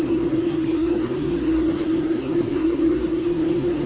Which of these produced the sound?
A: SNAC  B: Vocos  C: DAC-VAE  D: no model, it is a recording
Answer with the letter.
A